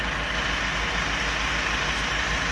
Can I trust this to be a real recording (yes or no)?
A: yes